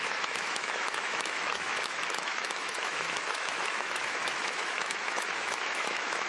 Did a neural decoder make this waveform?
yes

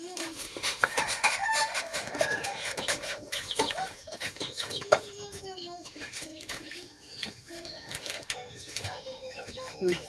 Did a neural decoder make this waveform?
yes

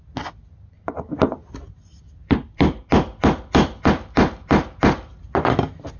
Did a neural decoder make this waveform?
no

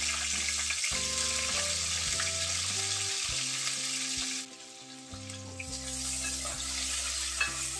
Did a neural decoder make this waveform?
no